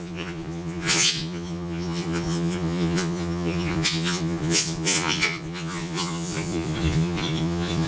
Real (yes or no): no